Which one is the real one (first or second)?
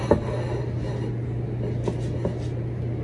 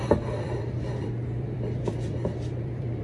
first